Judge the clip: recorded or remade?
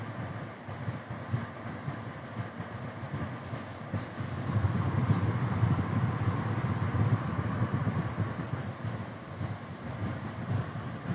recorded